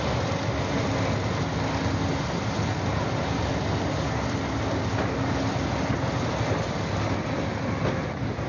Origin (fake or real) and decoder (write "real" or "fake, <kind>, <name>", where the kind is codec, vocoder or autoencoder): real